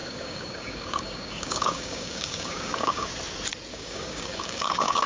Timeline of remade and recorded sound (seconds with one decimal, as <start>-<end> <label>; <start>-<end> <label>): 0.0-3.1 remade; 3.1-3.7 recorded; 3.7-5.1 remade